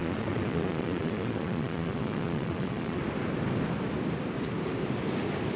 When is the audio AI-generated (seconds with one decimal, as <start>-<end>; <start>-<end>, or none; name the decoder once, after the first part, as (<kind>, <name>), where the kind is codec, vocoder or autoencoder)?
0.0-3.0 (vocoder, Vocos)